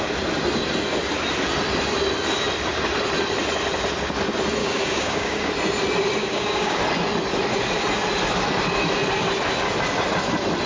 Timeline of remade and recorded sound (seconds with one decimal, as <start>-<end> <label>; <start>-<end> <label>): 0.0-4.6 recorded; 4.6-5.5 remade; 5.5-6.2 recorded; 6.2-6.8 remade; 6.8-10.7 recorded